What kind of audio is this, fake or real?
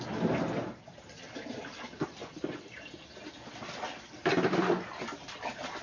real